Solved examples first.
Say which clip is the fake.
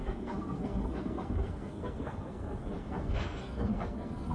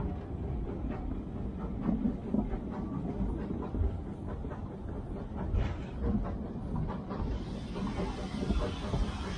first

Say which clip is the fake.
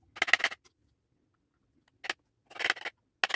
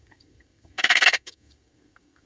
second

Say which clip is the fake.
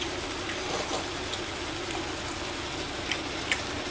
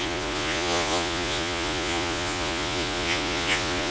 second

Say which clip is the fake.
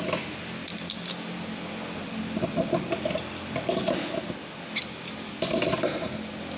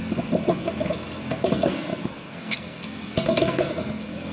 second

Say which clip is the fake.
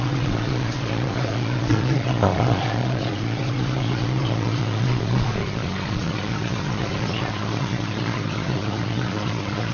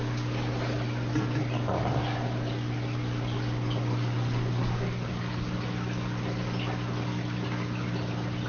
first